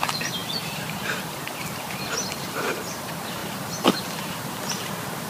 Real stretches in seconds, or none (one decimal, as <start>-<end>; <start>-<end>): 0.0-5.3